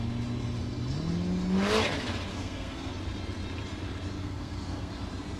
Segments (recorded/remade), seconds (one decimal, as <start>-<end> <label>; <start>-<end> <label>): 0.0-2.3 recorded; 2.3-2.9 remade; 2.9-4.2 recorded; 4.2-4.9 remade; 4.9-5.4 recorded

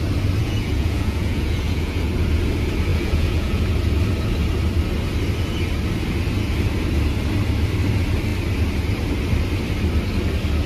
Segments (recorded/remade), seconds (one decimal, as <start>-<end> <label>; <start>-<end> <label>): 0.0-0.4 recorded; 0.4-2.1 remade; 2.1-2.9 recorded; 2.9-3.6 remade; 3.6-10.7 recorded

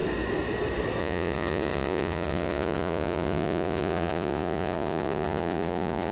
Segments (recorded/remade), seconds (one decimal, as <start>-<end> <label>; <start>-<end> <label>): 0.0-1.0 recorded; 1.0-6.1 remade

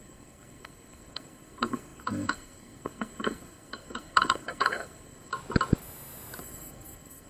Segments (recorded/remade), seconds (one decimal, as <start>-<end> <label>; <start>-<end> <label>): 0.0-5.3 remade; 5.3-6.4 recorded; 6.4-7.3 remade

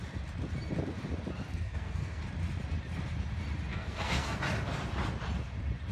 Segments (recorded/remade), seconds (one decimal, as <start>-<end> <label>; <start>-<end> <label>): 0.0-1.5 recorded; 1.5-2.2 remade; 2.2-3.7 recorded; 3.7-4.4 remade; 4.4-5.9 recorded

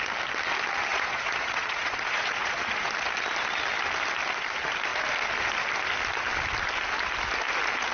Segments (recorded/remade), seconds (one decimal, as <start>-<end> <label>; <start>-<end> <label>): 0.0-0.9 recorded; 0.9-2.9 remade; 2.9-7.9 recorded

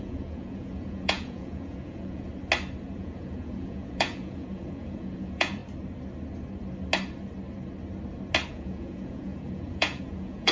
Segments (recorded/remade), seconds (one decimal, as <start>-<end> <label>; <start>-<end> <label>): 0.0-2.3 remade; 2.3-3.0 recorded; 3.0-5.6 remade; 5.6-8.5 recorded; 8.5-10.5 remade